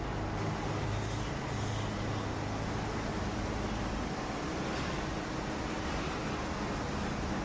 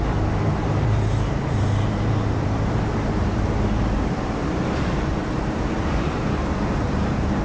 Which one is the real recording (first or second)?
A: first